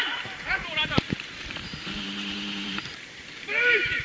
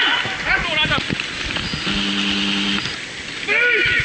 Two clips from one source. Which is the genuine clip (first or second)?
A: second